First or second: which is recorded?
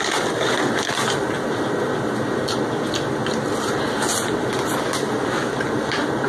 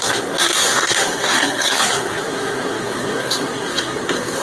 first